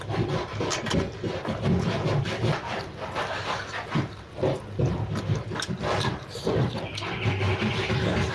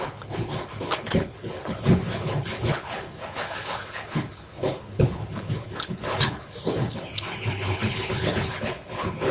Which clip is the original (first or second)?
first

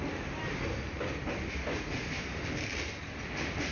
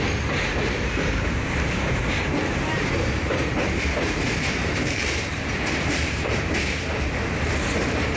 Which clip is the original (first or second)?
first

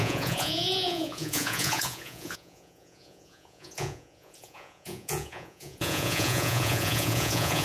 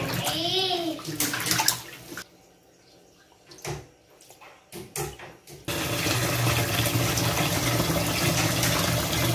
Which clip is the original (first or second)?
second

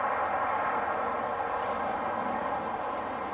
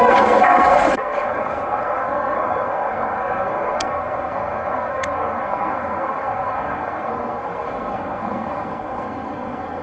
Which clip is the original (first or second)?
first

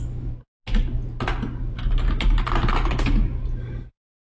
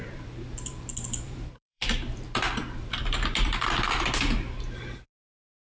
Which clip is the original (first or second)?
first